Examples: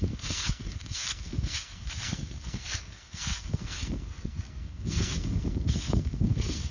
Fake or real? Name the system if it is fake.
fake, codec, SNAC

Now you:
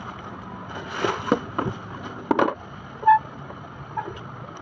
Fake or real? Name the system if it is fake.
real